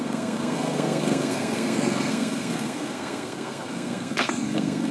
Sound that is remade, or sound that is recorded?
remade